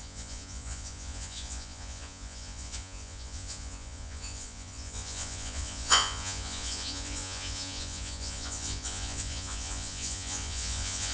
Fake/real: fake